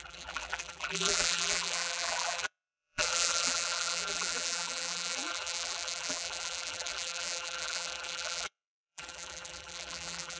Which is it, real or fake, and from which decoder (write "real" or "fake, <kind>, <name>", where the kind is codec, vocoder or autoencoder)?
fake, vocoder, BigVGAN v2